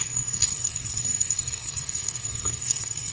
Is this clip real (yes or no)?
no